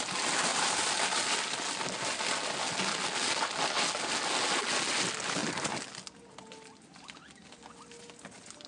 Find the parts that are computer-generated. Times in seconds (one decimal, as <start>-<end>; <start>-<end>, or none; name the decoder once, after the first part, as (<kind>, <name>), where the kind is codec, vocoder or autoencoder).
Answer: none